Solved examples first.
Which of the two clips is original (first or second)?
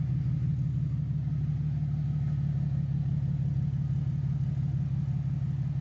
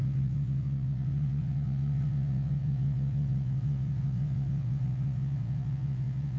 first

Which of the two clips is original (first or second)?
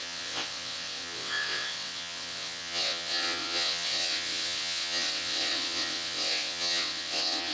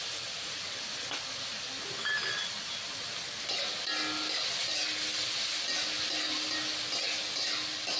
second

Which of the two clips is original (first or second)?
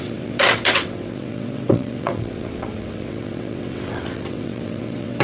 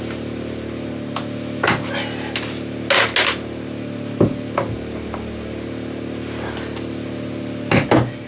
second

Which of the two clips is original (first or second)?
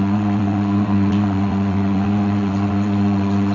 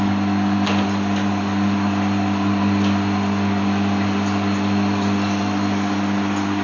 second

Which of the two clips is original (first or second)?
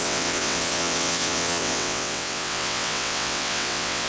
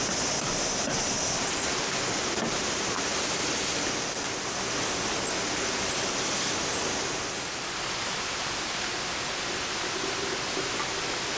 second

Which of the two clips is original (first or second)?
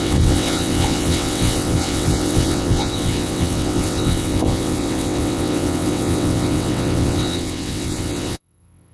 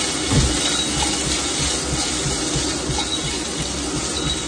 second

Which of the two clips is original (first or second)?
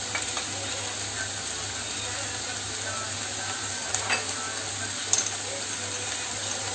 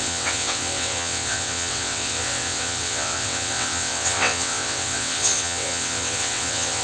first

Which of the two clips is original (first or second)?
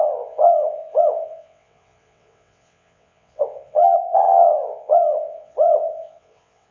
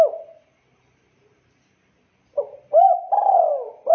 second